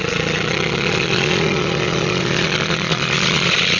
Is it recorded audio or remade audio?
remade